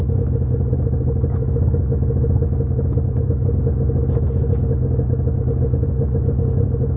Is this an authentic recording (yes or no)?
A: no